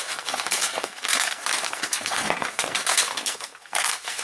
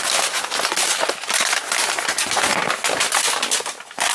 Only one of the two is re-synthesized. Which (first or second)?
first